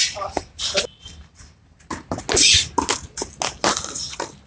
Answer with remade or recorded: recorded